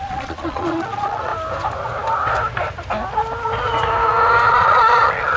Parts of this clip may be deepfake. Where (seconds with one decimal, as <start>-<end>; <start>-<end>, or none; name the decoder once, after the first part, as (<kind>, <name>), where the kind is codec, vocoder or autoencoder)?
0.0-1.3 (vocoder, Vocos); 4.5-5.4